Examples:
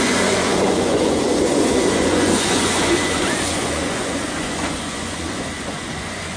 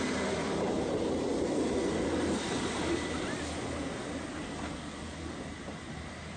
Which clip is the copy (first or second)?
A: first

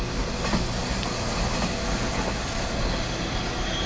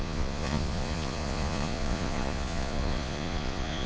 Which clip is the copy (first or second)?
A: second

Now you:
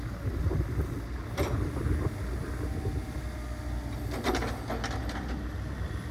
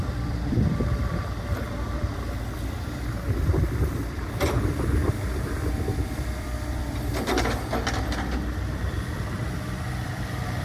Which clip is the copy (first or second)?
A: second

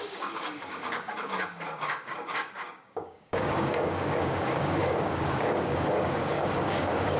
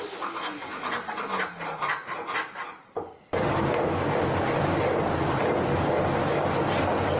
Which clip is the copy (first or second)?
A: first